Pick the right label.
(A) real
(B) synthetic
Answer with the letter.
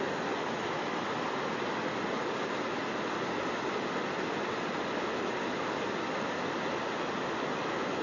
A